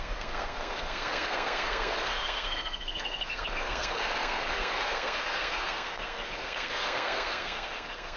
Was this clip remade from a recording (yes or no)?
yes